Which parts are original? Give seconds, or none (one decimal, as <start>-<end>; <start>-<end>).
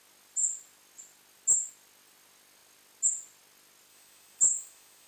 0.0-3.9